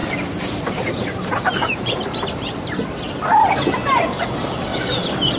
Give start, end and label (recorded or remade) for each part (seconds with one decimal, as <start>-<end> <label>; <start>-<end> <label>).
0.0-3.1 remade; 3.1-4.7 recorded; 4.7-5.4 remade